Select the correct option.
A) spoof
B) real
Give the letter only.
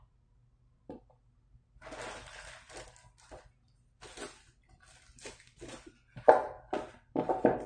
B